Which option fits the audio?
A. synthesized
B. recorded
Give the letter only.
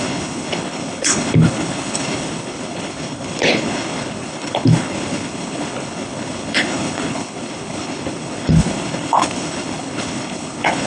A